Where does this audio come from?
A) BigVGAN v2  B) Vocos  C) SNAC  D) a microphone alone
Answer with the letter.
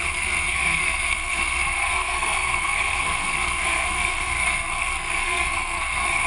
C